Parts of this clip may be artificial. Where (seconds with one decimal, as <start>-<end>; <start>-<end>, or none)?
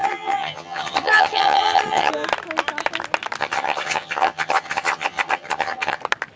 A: 0.0-2.1; 3.4-6.0